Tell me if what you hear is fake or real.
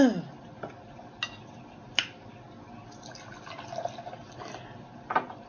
real